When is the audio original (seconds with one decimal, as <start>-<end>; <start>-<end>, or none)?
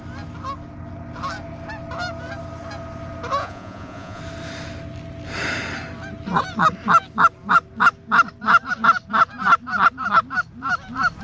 0.0-3.4; 4.2-11.2